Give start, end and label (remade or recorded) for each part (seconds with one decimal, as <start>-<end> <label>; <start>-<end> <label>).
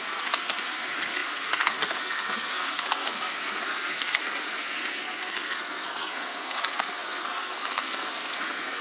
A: 0.0-8.8 remade